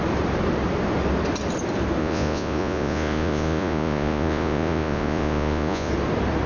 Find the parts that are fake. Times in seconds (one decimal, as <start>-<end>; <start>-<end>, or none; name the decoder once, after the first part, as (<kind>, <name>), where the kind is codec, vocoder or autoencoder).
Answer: 2.0-5.9 (vocoder, Vocos)